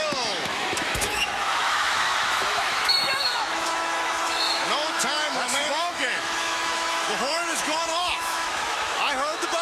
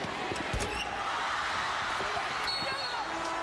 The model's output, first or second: first